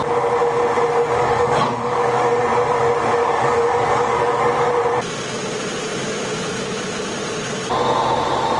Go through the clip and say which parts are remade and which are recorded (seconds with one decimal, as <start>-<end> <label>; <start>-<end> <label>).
0.0-0.9 recorded; 0.9-2.4 remade; 2.4-3.2 recorded; 3.2-4.7 remade; 4.7-8.6 recorded